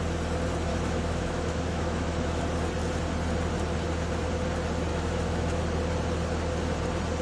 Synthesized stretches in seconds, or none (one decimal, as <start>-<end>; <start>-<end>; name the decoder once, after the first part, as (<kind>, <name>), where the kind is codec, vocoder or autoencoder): 0.7-2.4 (autoencoder, DAC-VAE); 4.9-5.6